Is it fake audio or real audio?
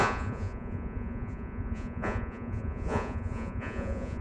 fake